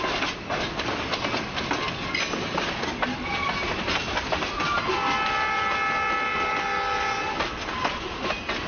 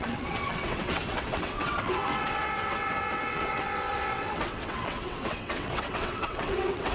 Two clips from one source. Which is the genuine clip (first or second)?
first